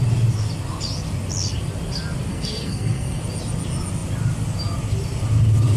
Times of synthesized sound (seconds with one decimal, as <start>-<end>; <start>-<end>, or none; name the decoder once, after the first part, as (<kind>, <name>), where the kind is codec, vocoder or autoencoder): 2.3-3.2 (codec, SNAC)